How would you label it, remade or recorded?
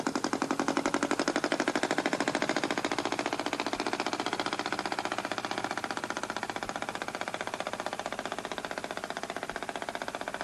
recorded